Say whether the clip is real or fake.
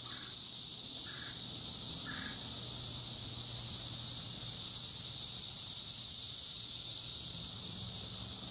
real